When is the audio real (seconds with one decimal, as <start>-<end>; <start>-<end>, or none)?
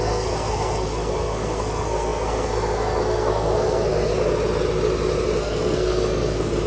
4.1-5.4